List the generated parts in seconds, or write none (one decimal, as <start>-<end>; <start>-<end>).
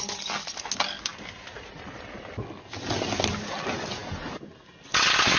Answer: 1.1-2.7